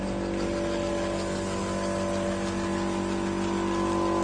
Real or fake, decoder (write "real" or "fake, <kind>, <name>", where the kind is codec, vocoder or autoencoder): real